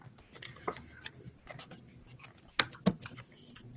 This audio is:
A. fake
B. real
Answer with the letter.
B